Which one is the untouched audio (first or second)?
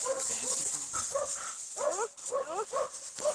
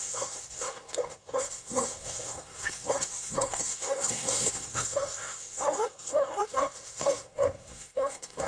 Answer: first